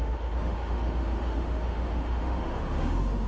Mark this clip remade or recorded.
remade